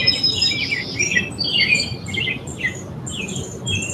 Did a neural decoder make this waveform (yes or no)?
no